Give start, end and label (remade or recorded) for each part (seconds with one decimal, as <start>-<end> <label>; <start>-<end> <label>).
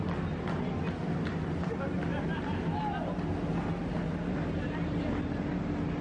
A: 0.0-6.0 recorded